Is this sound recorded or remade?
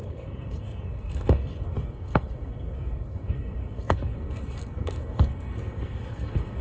remade